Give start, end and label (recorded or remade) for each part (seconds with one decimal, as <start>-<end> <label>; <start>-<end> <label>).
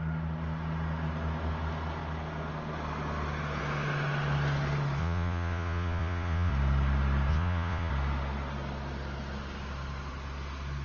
0.0-5.0 recorded; 5.0-6.5 remade; 6.5-7.3 recorded; 7.3-7.9 remade; 7.9-10.8 recorded